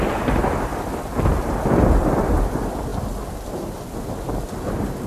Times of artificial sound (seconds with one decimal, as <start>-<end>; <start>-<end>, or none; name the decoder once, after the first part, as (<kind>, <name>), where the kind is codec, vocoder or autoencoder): none